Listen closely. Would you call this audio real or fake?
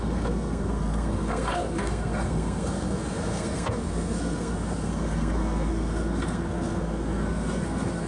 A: fake